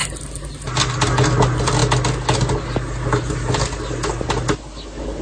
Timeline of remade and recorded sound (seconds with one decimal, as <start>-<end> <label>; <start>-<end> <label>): 0.0-5.2 recorded